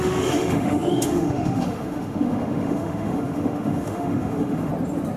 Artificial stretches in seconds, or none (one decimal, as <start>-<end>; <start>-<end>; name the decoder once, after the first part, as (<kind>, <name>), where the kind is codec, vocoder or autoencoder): 0.0-4.7 (autoencoder, DAC-VAE)